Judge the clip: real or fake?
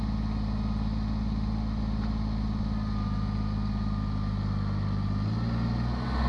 real